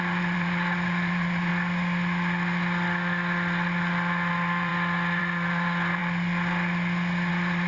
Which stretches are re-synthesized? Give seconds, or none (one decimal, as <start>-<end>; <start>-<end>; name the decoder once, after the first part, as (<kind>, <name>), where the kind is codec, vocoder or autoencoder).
0.0-1.5 (vocoder, BigVGAN v2); 4.3-4.7; 5.2-6.0; 7.3-7.7